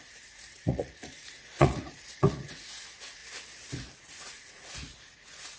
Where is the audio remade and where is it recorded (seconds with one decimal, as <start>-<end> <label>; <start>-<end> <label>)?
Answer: 0.0-3.2 remade; 3.2-4.0 recorded; 4.0-5.6 remade